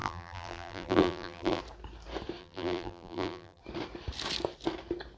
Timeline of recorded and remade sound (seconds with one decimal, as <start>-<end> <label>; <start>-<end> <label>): 0.0-1.6 remade; 1.6-2.4 recorded; 2.4-3.6 remade; 3.6-5.2 recorded